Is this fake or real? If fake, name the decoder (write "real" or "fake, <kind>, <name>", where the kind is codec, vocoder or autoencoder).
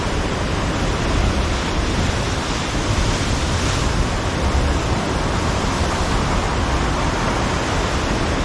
real